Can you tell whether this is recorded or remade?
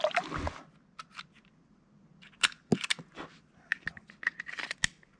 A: recorded